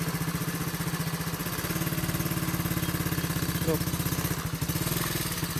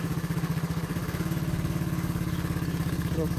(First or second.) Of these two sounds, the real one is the first